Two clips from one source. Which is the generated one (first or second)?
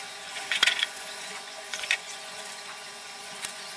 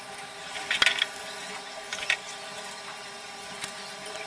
first